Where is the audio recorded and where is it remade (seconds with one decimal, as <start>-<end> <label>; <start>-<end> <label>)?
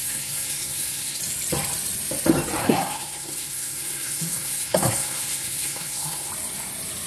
0.0-1.2 remade; 1.2-2.6 recorded; 2.6-6.3 remade; 6.3-7.1 recorded